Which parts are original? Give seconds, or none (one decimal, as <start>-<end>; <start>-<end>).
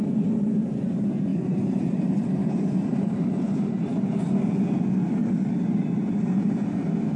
0.0-1.3; 1.9-2.4; 4.3-7.2